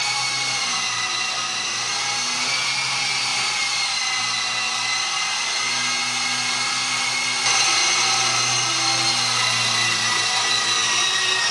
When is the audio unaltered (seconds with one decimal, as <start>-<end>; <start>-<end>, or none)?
0.0-11.5